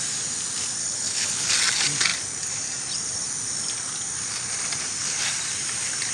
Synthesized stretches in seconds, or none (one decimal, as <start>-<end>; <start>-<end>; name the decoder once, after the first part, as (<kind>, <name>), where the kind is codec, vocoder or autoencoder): 0.8-1.5 (codec, HILCodec)